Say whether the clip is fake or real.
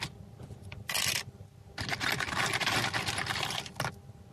real